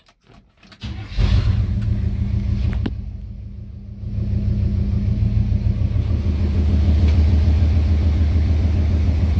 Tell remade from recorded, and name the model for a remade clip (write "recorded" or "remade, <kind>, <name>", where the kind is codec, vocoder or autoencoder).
recorded